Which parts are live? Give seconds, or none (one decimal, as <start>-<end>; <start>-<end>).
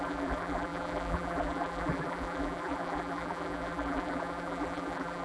none